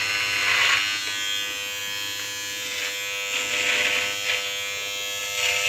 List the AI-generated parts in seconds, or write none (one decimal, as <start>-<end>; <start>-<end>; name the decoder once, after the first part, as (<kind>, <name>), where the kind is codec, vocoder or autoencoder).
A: none